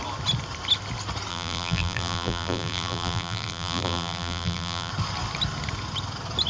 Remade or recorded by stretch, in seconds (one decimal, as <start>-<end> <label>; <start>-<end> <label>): 0.0-1.3 recorded; 1.3-4.9 remade; 4.9-6.5 recorded